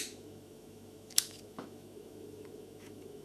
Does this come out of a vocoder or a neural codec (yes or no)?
yes